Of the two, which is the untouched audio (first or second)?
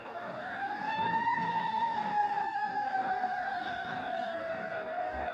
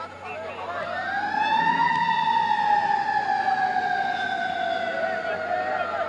second